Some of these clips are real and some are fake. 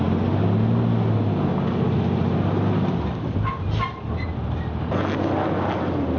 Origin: real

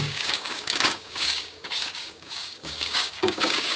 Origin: fake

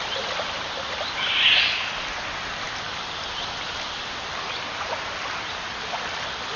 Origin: real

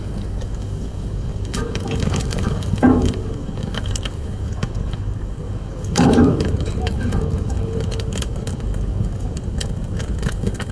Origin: fake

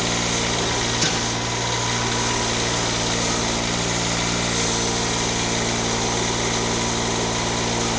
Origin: real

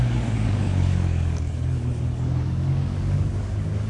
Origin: fake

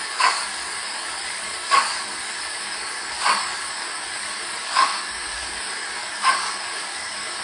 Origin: fake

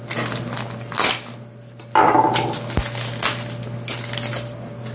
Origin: real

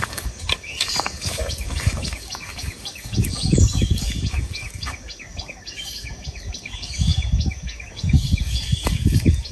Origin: fake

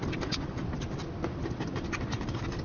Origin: real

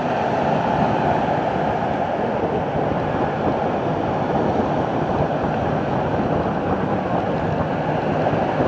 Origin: real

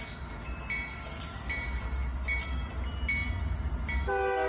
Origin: real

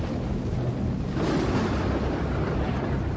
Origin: real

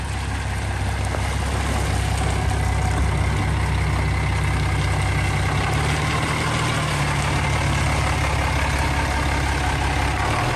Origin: real